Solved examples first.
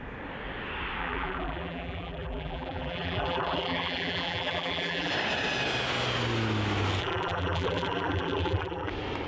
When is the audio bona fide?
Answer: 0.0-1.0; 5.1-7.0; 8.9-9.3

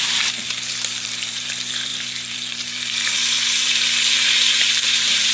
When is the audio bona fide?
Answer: none

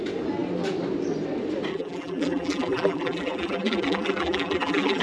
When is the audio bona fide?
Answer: 0.0-1.7

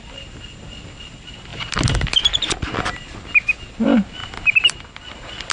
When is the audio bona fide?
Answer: 0.0-5.5

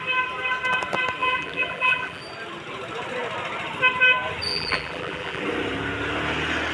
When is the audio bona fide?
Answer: 0.0-1.2; 2.2-4.5; 5.4-6.7

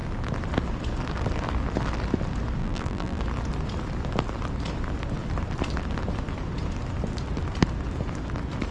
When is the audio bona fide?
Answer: 0.0-2.6; 3.2-8.7